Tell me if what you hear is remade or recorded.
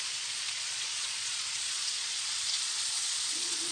remade